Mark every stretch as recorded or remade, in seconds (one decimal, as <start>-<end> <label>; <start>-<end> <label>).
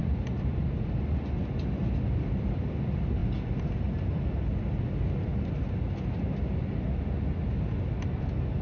0.0-8.6 recorded